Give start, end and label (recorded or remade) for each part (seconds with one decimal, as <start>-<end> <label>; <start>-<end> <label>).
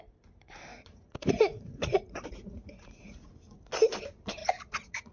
0.0-0.7 recorded; 0.7-3.3 remade; 3.3-4.4 recorded; 4.4-5.1 remade